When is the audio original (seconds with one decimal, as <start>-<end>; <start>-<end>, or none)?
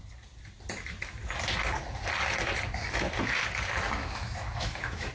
0.0-4.0